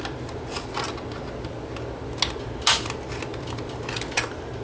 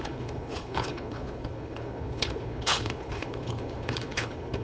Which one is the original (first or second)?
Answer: first